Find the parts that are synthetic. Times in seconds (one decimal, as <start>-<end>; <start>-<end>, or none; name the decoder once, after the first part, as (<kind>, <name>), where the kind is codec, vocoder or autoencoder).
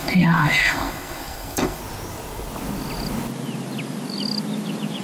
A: 0.0-1.8 (codec, SNAC)